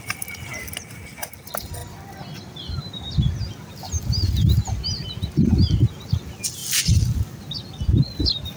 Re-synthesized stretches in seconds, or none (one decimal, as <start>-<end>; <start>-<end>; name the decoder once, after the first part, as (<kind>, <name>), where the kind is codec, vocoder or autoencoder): none